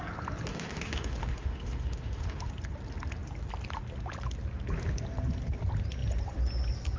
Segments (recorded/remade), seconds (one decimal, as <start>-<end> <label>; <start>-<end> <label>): 0.0-0.5 recorded; 0.5-2.5 remade; 2.5-7.0 recorded